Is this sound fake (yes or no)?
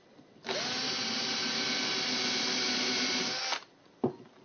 no